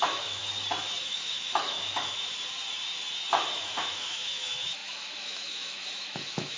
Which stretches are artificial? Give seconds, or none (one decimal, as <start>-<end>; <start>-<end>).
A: 0.0-0.4; 1.0-2.2; 3.5-6.6